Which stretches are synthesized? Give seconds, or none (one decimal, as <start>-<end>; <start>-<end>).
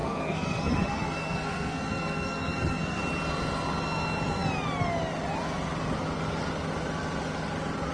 0.0-3.0